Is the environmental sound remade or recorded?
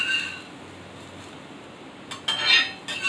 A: recorded